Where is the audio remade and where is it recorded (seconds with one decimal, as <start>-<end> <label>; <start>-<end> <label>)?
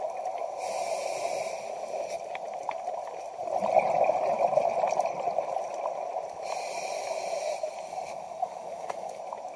0.0-7.9 recorded; 7.9-9.2 remade; 9.2-9.6 recorded